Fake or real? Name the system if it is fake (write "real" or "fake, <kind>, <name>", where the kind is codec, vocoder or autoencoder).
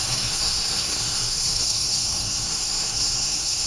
fake, codec, SNAC